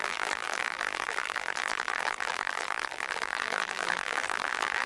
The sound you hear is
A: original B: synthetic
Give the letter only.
B